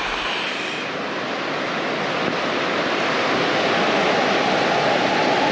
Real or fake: real